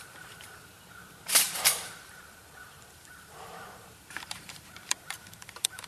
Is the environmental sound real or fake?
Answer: fake